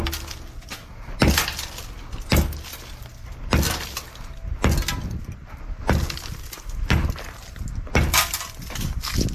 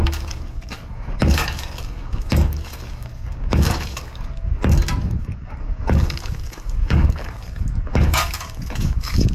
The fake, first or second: second